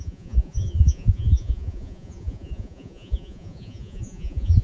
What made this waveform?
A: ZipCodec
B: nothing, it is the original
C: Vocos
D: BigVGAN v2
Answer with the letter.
C